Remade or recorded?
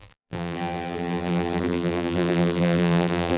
remade